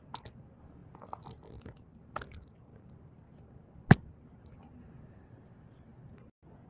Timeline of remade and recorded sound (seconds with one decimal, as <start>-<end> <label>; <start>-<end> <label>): 0.0-6.7 recorded